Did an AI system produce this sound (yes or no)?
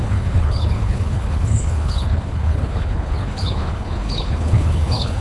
yes